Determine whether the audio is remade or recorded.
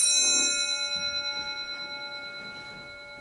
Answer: recorded